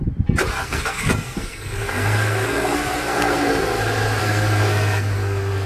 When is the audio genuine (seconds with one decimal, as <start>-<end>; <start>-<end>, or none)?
0.0-0.6; 3.8-4.2